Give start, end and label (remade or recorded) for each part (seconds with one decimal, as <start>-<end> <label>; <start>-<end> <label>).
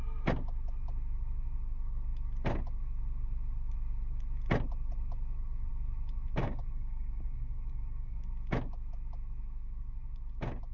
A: 0.0-6.4 recorded; 6.4-8.3 remade; 8.3-10.7 recorded